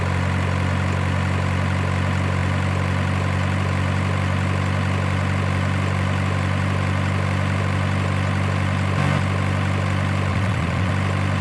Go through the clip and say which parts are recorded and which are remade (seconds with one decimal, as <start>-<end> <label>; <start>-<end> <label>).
0.0-10.3 recorded; 10.3-10.9 remade; 10.9-11.4 recorded